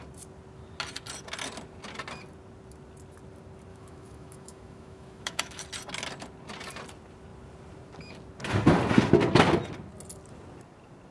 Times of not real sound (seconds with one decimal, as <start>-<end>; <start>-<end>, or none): 3.7-5.6